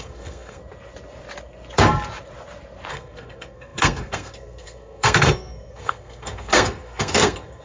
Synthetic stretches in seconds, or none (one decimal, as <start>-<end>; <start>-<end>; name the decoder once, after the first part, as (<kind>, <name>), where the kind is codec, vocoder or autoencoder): 0.0-0.6 (codec, SNAC); 2.9-7.6